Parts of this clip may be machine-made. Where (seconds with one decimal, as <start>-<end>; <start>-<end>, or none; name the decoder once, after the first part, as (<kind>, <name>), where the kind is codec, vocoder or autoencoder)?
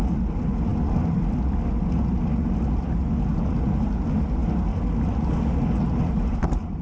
none